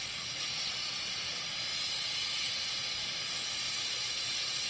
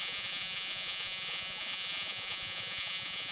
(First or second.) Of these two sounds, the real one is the first